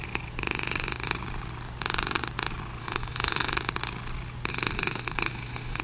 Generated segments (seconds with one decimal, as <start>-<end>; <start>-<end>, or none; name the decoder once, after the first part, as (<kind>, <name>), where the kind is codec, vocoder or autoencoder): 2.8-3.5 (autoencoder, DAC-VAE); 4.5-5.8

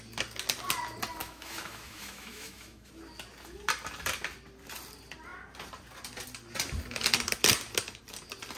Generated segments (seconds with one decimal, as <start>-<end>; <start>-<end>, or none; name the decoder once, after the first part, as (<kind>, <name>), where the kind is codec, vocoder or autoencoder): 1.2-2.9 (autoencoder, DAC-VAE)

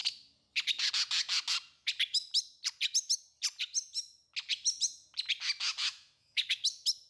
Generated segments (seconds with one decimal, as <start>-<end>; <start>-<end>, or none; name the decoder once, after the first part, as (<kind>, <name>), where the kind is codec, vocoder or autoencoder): 5.8-6.6 (autoencoder, DAC-VAE)